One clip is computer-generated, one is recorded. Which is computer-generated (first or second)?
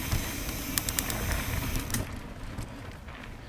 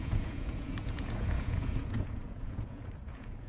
second